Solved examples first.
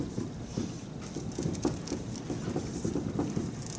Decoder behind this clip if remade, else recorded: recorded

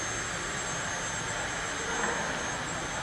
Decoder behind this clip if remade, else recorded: recorded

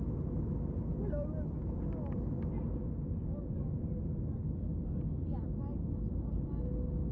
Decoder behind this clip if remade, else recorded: recorded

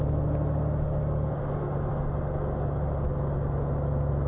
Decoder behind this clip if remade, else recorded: recorded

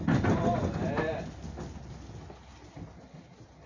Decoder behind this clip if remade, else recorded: recorded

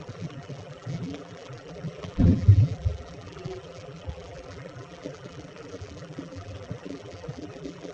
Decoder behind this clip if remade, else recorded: remade, vocoder, BigVGAN v2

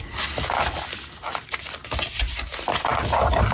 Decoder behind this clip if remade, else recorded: recorded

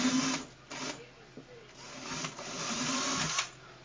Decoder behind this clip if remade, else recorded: recorded